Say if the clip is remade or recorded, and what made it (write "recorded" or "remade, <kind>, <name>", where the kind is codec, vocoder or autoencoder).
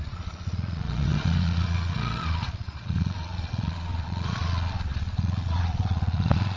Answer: remade, vocoder, Vocos